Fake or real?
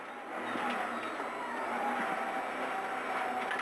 real